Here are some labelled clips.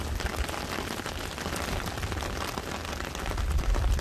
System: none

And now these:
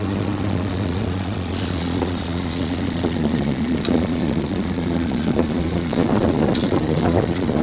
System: vocoder, Vocos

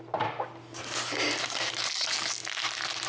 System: none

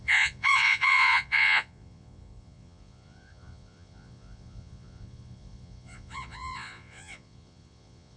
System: vocoder, Vocos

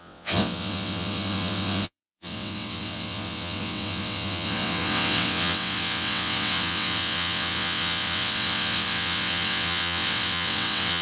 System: vocoder, WaveNeXt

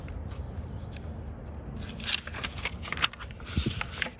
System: none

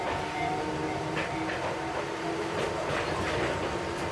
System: none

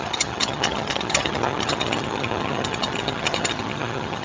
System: vocoder, HiFi-GAN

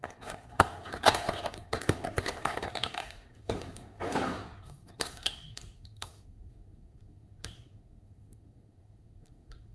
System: codec, SNAC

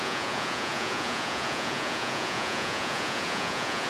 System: vocoder, Vocos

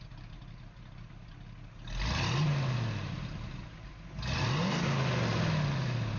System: none